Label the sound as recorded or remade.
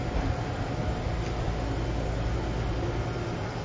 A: recorded